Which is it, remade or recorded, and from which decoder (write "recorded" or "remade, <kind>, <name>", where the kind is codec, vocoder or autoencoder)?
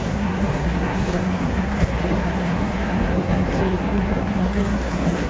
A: remade, codec, SNAC